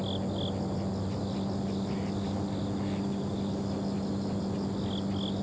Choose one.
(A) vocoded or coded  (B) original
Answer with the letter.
B